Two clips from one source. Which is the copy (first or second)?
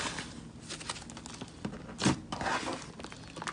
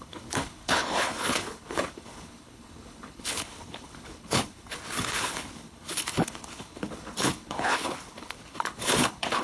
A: second